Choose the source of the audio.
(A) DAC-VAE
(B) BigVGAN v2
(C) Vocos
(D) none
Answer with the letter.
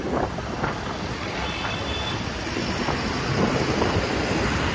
B